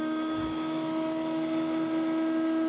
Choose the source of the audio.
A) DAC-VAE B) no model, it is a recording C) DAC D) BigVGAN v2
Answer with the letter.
A